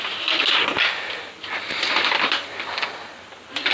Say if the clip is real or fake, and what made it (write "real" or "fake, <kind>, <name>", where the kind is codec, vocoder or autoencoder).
real